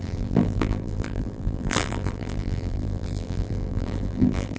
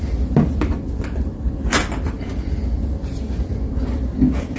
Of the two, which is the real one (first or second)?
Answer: second